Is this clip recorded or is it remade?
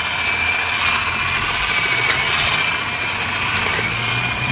recorded